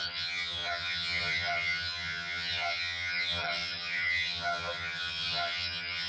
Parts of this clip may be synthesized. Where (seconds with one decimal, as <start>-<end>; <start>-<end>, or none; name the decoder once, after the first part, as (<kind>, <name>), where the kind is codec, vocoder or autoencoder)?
0.0-6.1 (vocoder, HiFi-GAN)